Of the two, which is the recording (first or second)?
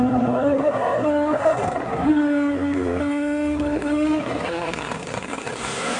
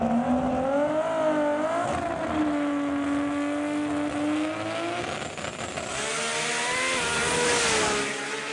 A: second